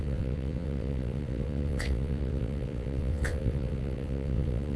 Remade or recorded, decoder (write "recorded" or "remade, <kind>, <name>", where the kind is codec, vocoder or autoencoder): remade, vocoder, WaveNeXt